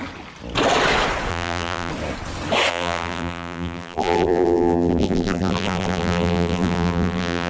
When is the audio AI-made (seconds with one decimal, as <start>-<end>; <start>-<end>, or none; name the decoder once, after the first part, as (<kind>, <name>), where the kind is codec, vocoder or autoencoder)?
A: 1.3-1.9 (vocoder, BigVGAN v2); 2.7-7.5

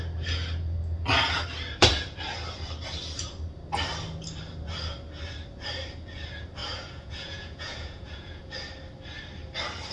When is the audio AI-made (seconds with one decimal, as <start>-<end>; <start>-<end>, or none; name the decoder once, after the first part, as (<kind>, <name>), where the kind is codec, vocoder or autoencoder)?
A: 6.6-8.5 (vocoder, Vocos)

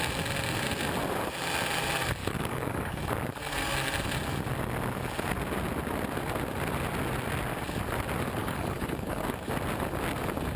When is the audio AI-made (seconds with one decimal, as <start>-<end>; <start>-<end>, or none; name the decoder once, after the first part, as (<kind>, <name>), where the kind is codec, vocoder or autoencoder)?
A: 2.2-3.0 (codec, DAC); 8.4-9.5

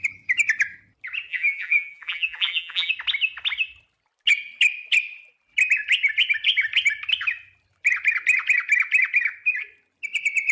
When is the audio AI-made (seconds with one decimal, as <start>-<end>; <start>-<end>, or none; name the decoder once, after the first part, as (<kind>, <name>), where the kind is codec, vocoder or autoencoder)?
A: 1.3-2.9 (vocoder, BigVGAN v2)

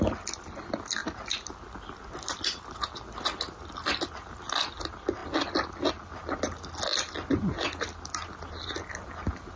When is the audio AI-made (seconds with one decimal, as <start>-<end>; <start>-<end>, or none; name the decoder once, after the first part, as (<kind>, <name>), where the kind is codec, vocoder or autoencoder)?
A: none

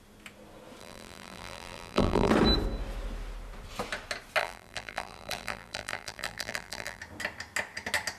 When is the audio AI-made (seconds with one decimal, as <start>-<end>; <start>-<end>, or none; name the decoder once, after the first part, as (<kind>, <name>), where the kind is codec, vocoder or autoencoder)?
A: 0.8-2.3 (vocoder, BigVGAN v2); 4.4-7.0

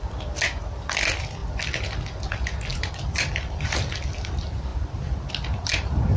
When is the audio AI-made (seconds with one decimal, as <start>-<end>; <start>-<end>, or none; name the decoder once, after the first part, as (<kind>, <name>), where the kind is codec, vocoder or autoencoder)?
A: 2.7-3.3 (vocoder, BigVGAN v2); 4.7-5.3

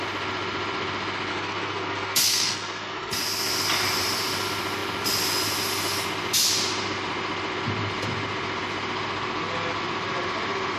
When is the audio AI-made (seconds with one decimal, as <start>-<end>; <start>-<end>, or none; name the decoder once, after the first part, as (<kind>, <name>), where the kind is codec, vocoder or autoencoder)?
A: 1.3-3.1 (codec, SNAC)